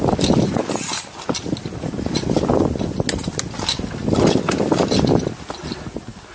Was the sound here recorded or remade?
recorded